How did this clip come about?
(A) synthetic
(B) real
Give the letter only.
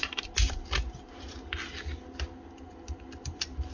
B